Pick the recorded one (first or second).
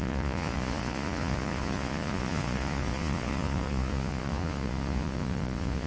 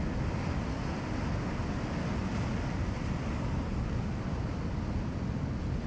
second